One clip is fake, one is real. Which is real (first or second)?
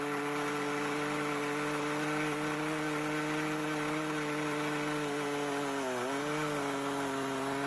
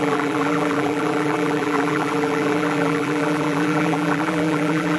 first